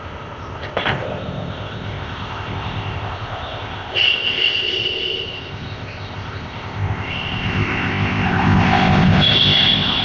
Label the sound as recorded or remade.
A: remade